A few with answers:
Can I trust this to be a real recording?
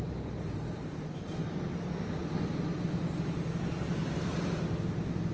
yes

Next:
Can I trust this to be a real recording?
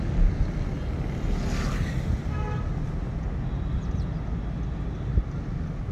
yes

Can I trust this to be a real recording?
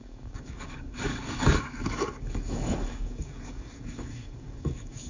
no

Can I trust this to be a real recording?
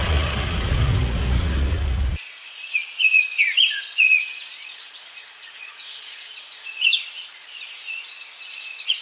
no